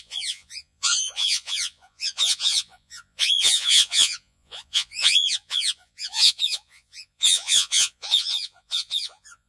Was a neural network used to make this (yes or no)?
yes